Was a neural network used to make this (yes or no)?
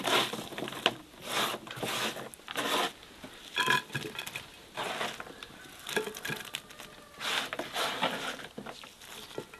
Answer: no